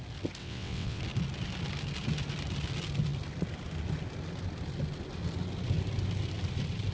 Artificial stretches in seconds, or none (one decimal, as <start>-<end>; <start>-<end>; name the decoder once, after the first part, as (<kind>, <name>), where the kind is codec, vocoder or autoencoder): 0.4-1.0 (vocoder, WaveNeXt)